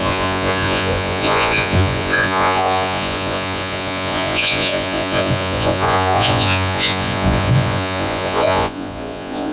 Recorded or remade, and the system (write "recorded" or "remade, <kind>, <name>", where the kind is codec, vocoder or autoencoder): remade, vocoder, Vocos